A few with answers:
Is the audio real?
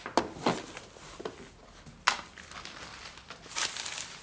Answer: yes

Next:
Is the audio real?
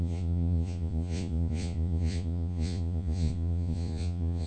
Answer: no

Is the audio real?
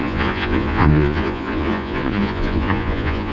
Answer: no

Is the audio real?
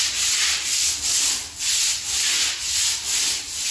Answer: yes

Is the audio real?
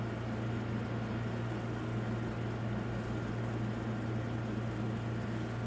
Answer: yes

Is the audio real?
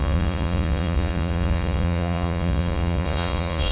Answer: no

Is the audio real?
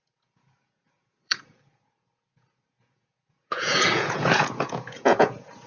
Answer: no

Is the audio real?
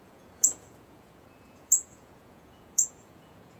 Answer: no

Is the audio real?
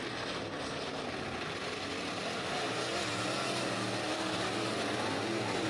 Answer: yes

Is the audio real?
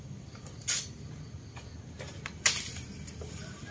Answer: yes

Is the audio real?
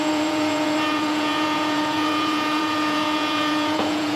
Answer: no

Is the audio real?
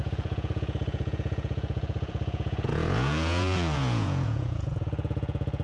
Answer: no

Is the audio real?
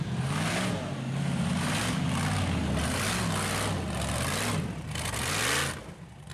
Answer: yes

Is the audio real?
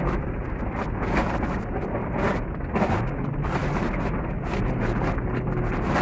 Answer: yes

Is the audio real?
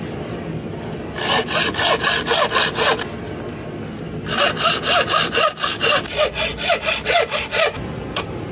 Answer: yes